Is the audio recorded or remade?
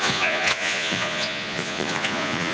remade